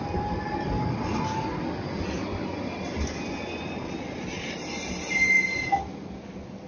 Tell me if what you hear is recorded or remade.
recorded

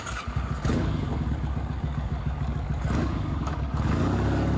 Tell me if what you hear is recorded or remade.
remade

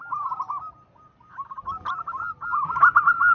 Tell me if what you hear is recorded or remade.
recorded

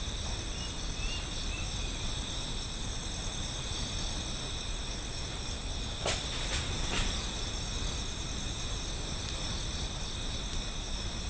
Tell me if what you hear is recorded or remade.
recorded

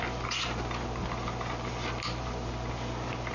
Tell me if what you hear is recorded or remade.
recorded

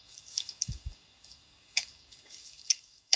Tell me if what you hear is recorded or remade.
remade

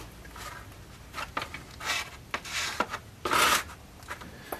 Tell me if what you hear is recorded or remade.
recorded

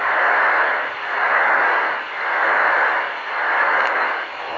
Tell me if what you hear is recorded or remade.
remade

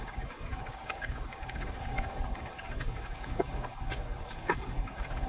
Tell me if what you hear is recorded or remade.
remade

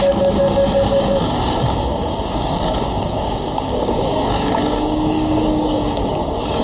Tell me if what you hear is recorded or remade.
remade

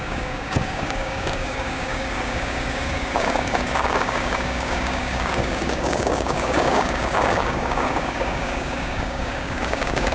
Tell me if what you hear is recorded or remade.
remade